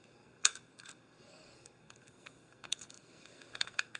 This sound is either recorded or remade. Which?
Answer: remade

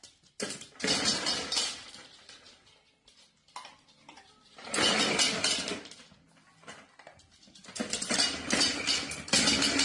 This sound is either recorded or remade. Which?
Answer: recorded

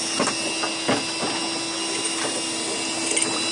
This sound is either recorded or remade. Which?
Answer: recorded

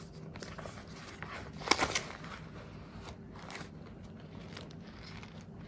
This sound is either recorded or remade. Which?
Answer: recorded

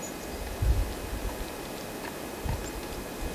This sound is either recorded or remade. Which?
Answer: recorded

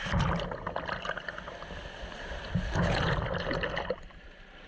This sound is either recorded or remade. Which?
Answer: recorded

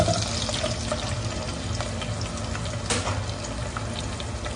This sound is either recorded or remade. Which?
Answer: recorded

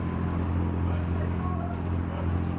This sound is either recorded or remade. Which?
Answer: recorded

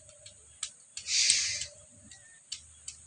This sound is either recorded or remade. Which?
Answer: recorded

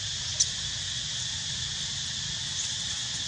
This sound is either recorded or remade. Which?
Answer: recorded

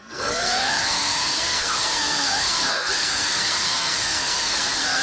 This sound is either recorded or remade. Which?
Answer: remade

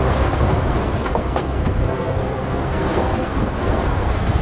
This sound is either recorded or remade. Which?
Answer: remade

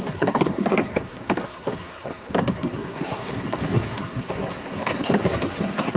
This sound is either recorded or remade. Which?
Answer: remade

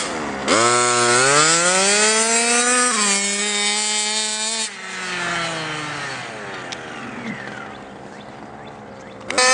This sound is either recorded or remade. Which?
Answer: recorded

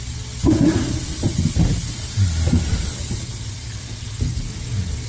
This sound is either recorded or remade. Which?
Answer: recorded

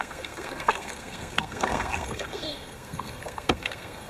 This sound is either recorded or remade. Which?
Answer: remade